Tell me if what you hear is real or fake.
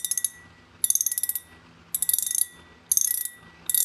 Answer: real